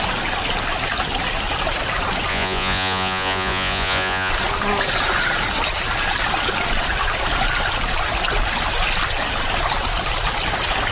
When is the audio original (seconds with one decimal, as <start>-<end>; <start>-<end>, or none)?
0.0-2.3; 4.3-10.9